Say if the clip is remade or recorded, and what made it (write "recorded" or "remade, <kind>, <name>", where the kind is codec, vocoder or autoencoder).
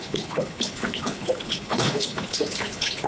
remade, codec, HILCodec